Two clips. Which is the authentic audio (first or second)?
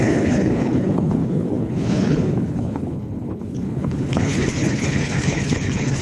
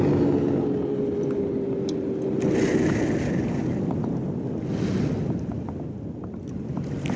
second